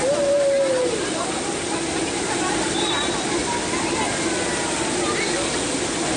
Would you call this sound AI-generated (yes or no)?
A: no